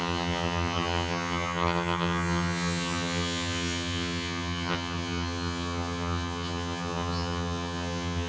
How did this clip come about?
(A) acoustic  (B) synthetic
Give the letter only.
B